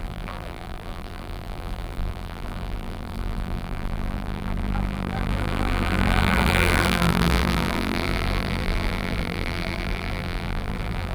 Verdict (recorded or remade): remade